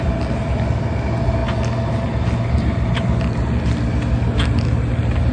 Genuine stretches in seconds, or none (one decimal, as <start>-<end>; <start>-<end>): 0.0-5.3